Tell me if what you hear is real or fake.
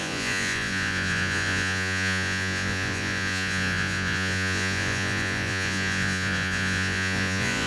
fake